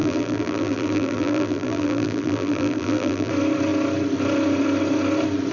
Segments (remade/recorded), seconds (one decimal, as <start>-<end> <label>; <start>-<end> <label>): 0.0-3.3 remade; 3.3-5.5 recorded